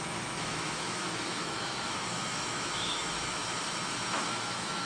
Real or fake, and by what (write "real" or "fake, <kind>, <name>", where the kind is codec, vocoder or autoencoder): fake, autoencoder, DAC-VAE